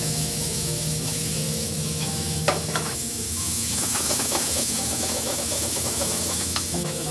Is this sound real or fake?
fake